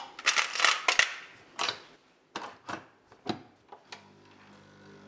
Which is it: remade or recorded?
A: recorded